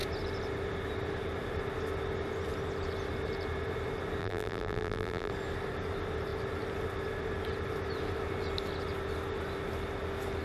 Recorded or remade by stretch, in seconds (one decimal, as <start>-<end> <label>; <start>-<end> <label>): 0.0-4.2 recorded; 4.2-5.3 remade; 5.3-10.4 recorded